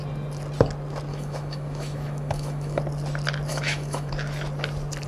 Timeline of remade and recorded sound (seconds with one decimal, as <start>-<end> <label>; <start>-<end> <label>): 0.0-1.1 recorded; 1.1-2.8 remade; 2.8-3.5 recorded; 3.5-4.1 remade; 4.1-5.1 recorded